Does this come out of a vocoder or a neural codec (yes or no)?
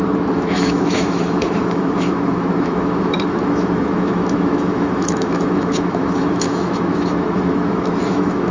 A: yes